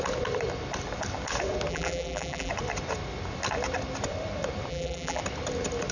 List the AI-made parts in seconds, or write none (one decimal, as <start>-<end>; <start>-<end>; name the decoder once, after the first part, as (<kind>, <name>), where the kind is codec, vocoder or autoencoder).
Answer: 1.7-2.5 (vocoder, BigVGAN v2); 4.7-5.2

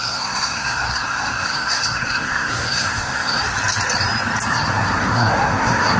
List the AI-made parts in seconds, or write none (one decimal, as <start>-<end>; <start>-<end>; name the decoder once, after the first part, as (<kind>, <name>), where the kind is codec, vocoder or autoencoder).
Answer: 0.0-3.4 (codec, SNAC); 4.5-6.0

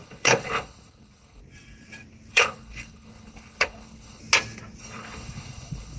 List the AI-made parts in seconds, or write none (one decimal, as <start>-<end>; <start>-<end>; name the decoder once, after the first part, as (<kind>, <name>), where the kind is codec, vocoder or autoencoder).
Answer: 0.0-1.4 (codec, HILCodec); 2.3-4.2; 4.8-6.0

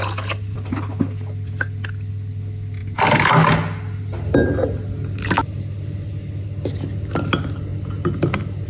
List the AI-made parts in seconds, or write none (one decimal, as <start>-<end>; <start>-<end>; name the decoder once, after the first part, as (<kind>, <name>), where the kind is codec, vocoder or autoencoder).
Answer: none